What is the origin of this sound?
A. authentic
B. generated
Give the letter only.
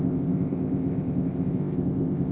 B